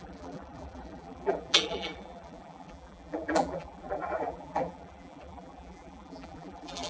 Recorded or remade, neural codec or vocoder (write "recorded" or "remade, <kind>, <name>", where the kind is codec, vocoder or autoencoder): remade, vocoder, BigVGAN v2